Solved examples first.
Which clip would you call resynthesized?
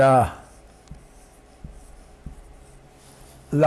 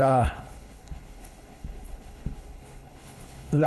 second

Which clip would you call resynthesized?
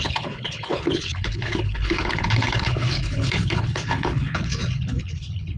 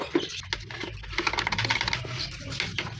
first